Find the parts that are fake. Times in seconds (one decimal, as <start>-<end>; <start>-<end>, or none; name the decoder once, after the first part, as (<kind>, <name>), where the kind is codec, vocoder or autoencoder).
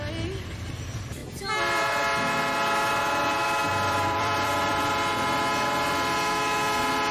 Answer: 3.6-4.9 (vocoder, BigVGAN v2)